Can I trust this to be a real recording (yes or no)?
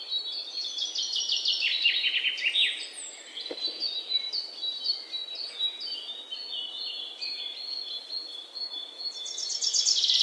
yes